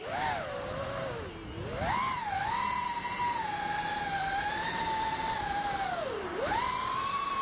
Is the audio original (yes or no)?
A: yes